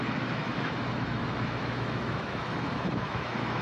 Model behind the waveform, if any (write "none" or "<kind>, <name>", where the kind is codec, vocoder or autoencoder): autoencoder, DAC-VAE